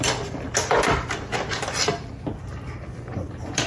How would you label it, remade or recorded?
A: remade